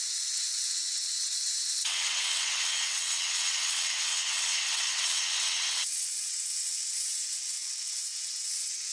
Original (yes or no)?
no